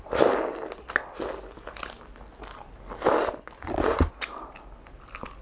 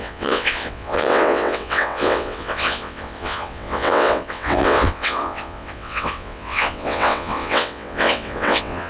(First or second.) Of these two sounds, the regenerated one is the second